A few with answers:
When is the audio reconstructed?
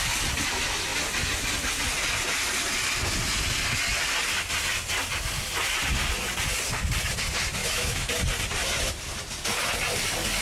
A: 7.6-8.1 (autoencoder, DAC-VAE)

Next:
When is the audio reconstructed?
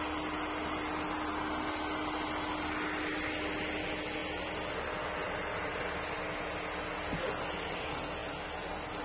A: none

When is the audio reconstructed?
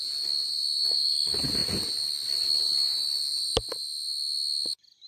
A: none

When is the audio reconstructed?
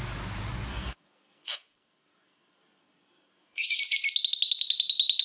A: 0.7-3.8 (codec, SNAC)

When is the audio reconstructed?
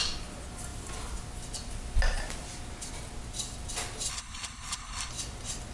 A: 4.1-5.1 (codec, HILCodec)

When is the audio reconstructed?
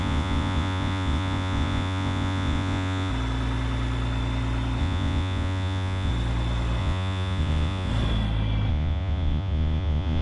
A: 0.0-3.1 (vocoder, Vocos); 4.8-6.1; 6.8-7.9; 8.7-10.2